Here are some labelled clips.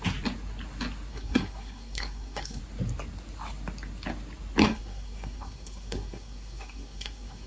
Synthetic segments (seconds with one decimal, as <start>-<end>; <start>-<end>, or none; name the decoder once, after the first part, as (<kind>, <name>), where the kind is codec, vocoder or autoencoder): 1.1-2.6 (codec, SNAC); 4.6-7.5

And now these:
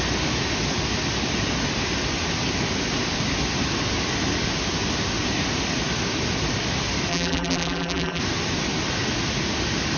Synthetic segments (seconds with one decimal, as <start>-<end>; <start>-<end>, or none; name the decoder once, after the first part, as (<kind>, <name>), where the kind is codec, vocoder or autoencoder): 7.1-8.2 (vocoder, BigVGAN v2)

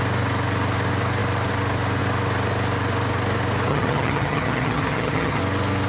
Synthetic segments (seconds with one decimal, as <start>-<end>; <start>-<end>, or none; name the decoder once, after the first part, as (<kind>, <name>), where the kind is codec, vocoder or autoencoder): 3.7-5.4 (vocoder, HiFi-GAN)